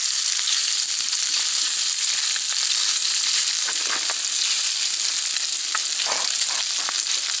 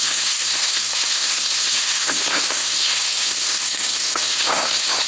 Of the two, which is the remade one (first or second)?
second